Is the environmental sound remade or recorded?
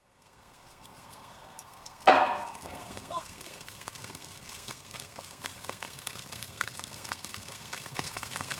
remade